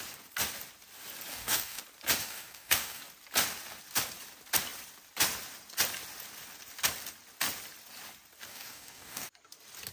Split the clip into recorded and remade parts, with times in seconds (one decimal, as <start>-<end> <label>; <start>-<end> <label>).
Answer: 0.0-1.3 recorded; 1.3-1.8 remade; 1.8-2.2 recorded; 2.2-3.0 remade; 3.0-8.5 recorded; 8.5-9.3 remade; 9.3-9.9 recorded